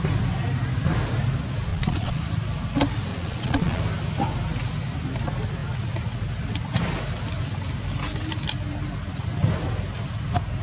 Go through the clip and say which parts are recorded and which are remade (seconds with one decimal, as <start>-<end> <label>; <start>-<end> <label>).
0.0-1.7 recorded; 1.7-2.2 remade; 2.2-3.1 recorded; 3.1-3.8 remade; 3.8-10.6 recorded